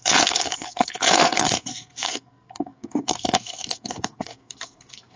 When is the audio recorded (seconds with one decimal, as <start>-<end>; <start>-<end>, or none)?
none